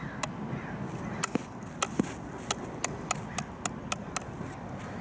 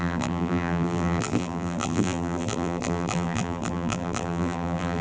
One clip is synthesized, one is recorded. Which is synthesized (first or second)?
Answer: second